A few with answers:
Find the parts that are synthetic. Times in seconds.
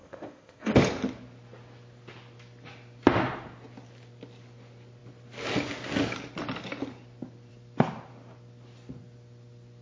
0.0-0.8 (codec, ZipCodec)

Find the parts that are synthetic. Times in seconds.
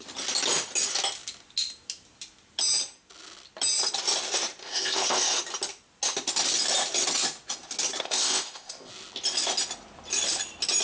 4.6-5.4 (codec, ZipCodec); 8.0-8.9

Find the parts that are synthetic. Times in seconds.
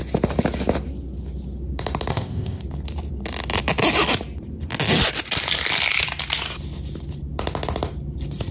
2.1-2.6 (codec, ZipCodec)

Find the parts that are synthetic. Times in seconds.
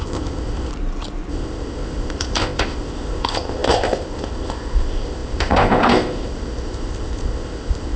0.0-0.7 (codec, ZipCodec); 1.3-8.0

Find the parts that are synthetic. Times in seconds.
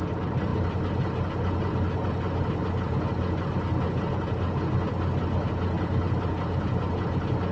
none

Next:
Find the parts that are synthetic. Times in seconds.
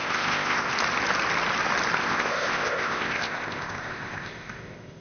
0.0-0.7 (codec, ZipCodec); 2.0-5.0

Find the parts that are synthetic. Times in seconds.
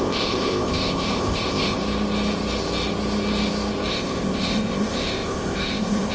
0.0-1.8 (codec, ZipCodec); 3.9-6.1